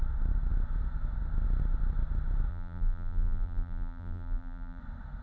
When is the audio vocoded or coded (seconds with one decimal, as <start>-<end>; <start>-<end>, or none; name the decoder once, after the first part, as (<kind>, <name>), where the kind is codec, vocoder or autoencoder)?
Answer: 2.5-4.8 (vocoder, BigVGAN v2)